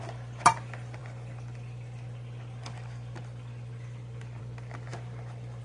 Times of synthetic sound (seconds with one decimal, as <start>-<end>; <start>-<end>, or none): none

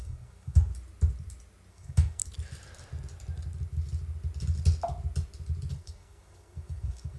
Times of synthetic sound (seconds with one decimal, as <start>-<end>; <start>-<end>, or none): 0.0-0.7; 1.7-2.2; 5.7-7.2

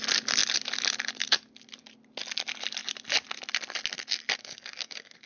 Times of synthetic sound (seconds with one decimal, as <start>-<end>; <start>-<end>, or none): 4.4-5.3

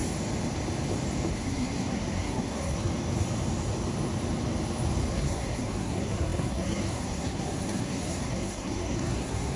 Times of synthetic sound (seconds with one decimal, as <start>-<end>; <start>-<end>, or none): 1.3-2.9; 5.1-9.6

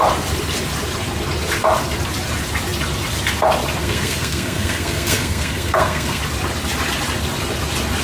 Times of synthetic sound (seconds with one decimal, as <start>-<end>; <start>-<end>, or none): 3.8-6.2

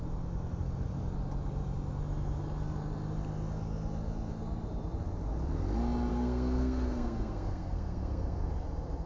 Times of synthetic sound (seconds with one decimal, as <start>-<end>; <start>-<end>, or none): 6.1-8.5

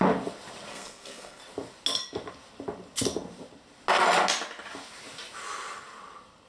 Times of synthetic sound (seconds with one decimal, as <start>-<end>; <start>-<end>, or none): 0.7-1.4

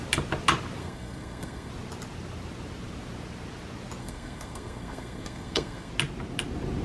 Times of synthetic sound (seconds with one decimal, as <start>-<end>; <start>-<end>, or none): 0.8-1.7; 4.0-5.9